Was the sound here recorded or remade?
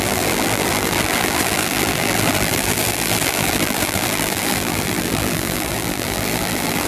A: remade